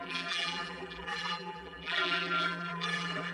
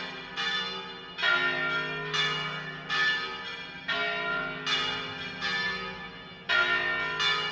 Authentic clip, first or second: second